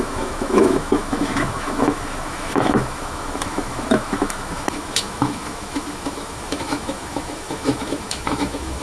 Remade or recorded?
remade